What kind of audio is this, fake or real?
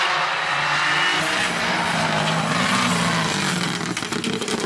real